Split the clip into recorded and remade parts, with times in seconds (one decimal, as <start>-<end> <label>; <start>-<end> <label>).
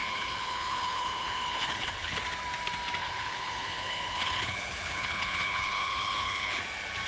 0.0-2.2 remade; 2.2-3.0 recorded; 3.0-6.6 remade; 6.6-7.1 recorded